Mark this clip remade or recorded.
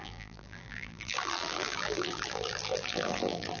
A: remade